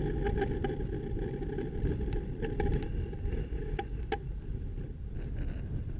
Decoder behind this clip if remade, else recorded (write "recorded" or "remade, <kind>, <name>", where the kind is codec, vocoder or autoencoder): recorded